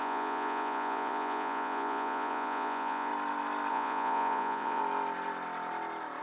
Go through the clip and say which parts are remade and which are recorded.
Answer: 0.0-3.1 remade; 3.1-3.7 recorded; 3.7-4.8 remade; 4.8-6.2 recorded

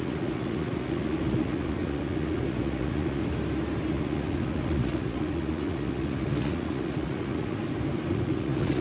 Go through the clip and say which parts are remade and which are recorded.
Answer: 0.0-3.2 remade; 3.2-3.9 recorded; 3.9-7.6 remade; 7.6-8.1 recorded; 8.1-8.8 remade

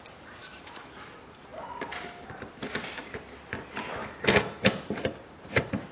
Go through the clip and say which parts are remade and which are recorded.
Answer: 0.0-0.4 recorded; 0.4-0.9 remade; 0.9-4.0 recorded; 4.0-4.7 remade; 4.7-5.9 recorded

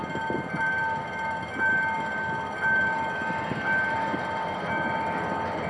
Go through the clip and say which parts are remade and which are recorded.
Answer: 0.0-5.7 recorded

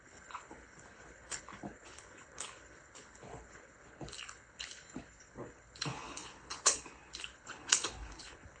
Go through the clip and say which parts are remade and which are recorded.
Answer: 0.0-8.6 remade

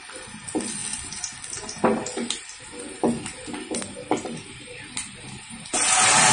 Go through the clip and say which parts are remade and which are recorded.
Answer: 0.0-6.3 recorded

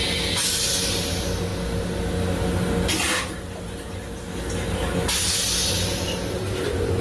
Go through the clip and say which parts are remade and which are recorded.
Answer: 0.0-7.0 recorded

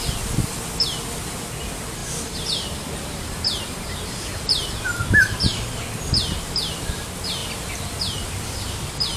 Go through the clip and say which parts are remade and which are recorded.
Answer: 0.0-2.0 recorded; 2.0-5.7 remade; 5.7-7.4 recorded; 7.4-9.2 remade